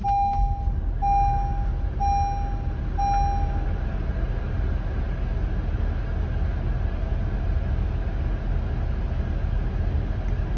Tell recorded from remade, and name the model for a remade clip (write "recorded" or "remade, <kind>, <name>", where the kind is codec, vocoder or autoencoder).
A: recorded